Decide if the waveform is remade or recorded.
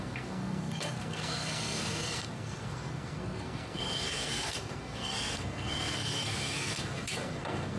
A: remade